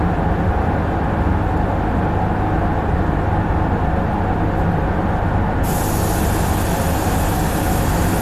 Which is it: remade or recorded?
recorded